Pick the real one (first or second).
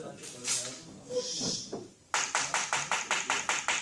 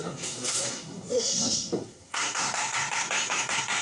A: first